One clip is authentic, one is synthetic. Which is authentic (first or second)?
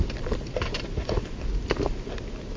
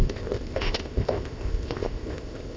first